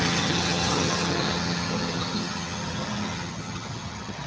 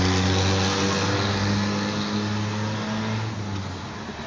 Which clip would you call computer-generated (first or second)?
first